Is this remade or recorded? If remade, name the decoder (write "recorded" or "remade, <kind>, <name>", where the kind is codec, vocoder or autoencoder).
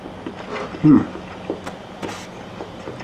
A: recorded